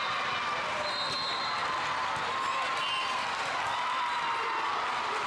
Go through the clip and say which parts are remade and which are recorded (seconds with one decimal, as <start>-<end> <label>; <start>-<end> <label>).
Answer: 0.0-5.3 recorded